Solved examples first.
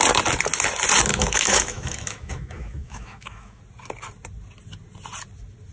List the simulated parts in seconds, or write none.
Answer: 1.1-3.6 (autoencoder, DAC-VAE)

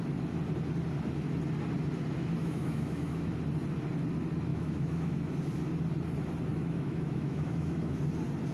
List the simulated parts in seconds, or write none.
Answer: 2.4-3.3 (autoencoder, DAC-VAE); 4.5-5.3; 6.5-8.0

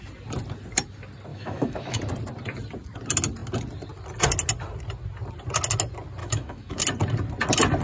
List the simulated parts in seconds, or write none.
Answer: 1.3-2.0 (autoencoder, DAC-VAE); 6.2-6.8

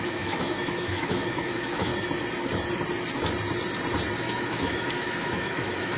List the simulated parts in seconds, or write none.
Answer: 0.0-1.9 (autoencoder, DAC-VAE); 4.2-6.0

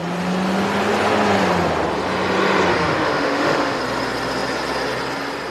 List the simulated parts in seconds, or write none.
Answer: 2.7-3.8 (autoencoder, DAC-VAE)